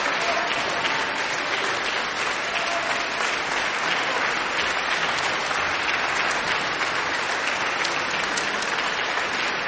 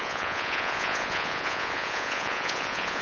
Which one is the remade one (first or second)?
second